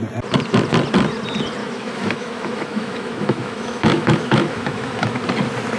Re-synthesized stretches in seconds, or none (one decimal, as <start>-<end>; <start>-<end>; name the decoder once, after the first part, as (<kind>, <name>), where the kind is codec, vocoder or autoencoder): 1.6-5.1 (autoencoder, DAC-VAE)